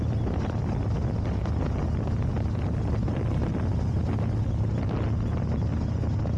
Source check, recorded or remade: recorded